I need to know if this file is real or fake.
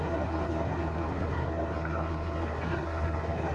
fake